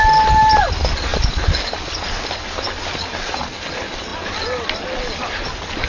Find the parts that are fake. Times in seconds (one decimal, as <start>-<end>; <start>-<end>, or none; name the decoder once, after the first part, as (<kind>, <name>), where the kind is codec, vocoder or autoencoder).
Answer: none